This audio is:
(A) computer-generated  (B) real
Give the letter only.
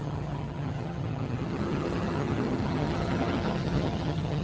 A